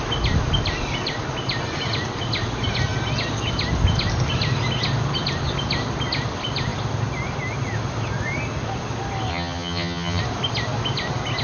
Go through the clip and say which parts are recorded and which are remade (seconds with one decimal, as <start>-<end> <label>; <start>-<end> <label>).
0.0-9.3 recorded; 9.3-10.2 remade; 10.2-11.4 recorded